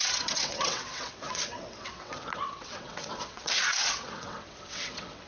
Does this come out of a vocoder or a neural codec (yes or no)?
yes